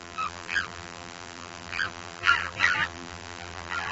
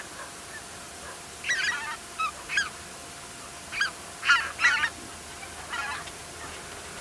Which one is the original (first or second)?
second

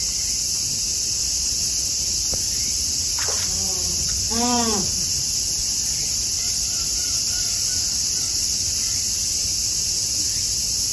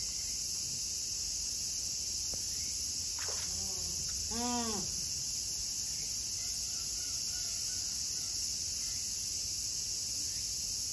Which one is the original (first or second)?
second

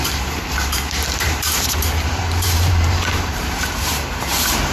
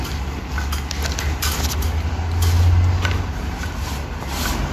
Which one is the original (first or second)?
second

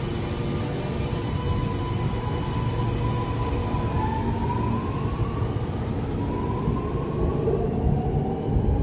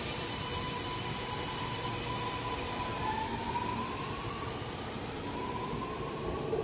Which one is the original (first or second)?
first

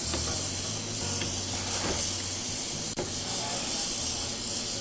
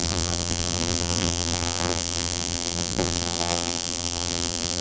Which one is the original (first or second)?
first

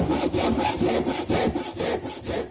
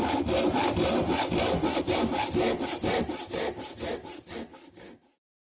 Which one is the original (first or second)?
second